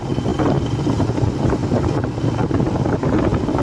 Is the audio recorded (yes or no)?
yes